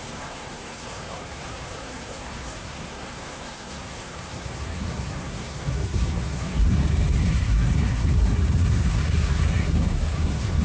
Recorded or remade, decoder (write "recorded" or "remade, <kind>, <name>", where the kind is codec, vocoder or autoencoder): remade, codec, SNAC